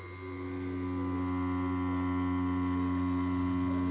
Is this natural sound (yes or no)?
yes